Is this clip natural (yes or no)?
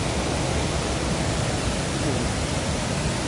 no